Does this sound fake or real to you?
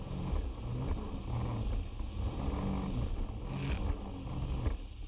real